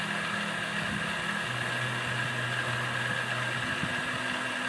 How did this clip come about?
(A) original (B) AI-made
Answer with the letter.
A